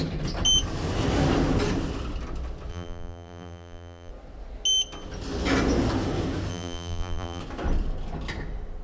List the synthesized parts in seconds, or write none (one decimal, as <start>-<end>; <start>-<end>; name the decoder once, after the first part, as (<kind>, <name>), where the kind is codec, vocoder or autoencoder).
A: 2.7-4.1 (vocoder, BigVGAN v2); 6.5-7.4